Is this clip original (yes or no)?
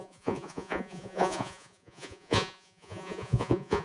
no